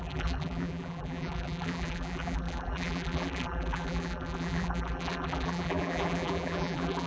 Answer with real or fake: fake